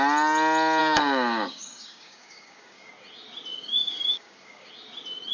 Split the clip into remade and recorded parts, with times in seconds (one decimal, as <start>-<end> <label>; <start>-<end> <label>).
0.0-0.8 recorded; 0.8-2.9 remade; 2.9-3.5 recorded; 3.5-4.7 remade; 4.7-5.3 recorded